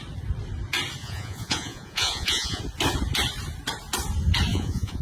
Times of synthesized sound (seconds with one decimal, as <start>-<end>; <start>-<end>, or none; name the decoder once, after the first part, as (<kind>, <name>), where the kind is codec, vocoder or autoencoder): 1.0-2.6 (vocoder, Vocos); 4.5-5.0